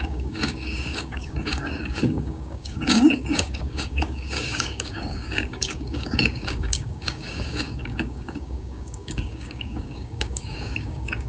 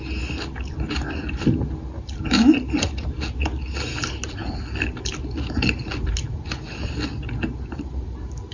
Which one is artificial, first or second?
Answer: first